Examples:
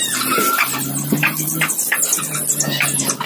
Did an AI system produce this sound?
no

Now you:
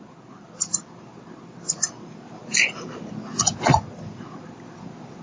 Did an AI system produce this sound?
no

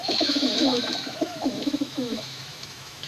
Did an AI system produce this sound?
yes